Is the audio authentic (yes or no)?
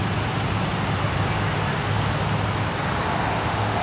yes